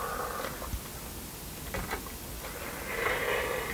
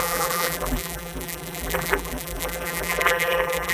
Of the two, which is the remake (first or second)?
second